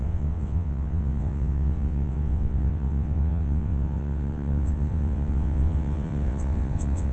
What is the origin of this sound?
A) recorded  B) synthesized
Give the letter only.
B